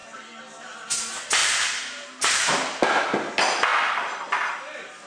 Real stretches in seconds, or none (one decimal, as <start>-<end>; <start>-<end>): 0.0-1.4; 2.8-5.1